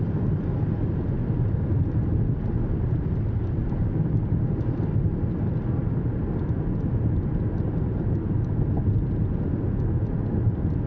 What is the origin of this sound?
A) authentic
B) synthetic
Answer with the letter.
A